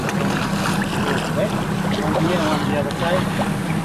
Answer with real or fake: real